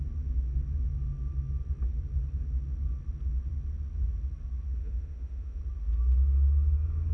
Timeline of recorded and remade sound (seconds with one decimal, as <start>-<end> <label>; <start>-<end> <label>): 0.0-4.8 recorded; 4.8-5.6 remade; 5.6-7.1 recorded